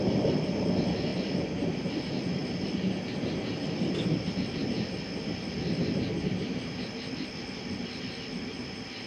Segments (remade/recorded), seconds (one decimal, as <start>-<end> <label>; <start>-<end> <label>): 0.0-9.1 remade

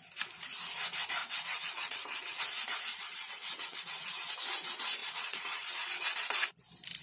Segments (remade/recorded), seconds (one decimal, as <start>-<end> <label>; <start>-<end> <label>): 0.0-1.2 recorded; 1.2-2.4 remade; 2.4-2.9 recorded; 2.9-4.3 remade; 4.3-5.0 recorded; 5.0-5.9 remade; 5.9-7.0 recorded

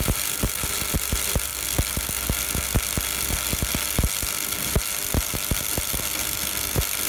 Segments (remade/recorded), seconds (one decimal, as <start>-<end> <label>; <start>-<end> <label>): 0.0-1.5 remade; 1.5-5.7 recorded; 5.7-7.1 remade

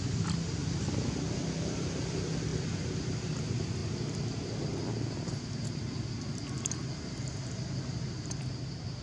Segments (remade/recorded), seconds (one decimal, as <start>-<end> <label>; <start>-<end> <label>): 0.0-9.0 recorded

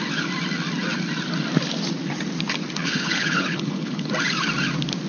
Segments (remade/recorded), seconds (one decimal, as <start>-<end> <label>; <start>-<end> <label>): 0.0-2.8 recorded; 2.8-4.1 remade; 4.1-5.1 recorded

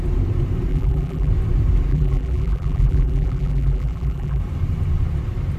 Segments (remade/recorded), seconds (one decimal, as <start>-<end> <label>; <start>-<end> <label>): 0.0-0.7 recorded; 0.7-1.3 remade; 1.3-1.9 recorded; 1.9-4.4 remade; 4.4-5.6 recorded